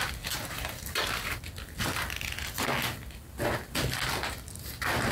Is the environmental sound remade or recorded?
recorded